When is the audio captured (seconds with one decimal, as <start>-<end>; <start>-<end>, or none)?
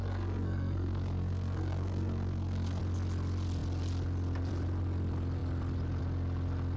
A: 2.8-6.8